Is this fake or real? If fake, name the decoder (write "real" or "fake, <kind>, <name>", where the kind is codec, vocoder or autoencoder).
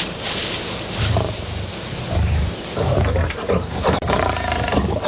fake, vocoder, BigVGAN v2